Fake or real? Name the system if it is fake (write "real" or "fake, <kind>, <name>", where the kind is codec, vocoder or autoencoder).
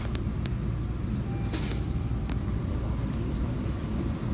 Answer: fake, vocoder, BigVGAN v2